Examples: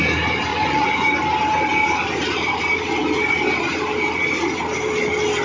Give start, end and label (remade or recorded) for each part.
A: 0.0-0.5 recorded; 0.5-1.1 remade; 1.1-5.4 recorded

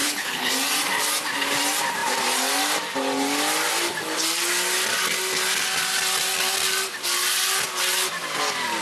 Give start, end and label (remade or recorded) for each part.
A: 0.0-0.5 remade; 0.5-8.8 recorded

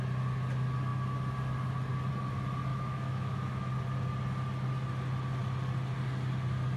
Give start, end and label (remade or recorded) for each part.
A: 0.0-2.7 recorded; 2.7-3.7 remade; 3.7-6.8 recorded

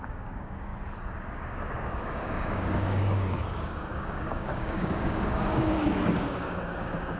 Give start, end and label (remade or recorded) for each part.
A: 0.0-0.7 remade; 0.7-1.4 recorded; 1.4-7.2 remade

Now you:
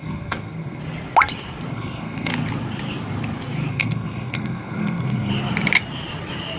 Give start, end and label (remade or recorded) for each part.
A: 0.0-0.8 remade; 0.8-1.7 recorded; 1.7-2.3 remade; 2.3-3.7 recorded; 3.7-5.3 remade; 5.3-6.6 recorded

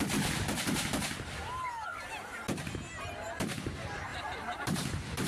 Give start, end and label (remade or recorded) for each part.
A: 0.0-4.1 recorded; 4.1-5.3 remade